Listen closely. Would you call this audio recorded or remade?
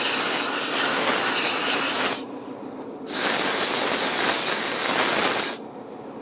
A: recorded